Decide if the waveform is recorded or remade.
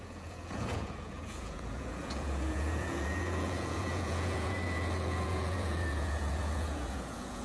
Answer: remade